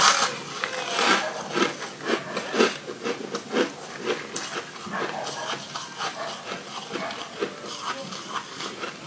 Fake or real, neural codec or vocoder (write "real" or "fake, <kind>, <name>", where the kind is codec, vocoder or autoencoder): real